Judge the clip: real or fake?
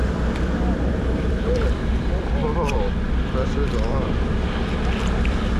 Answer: fake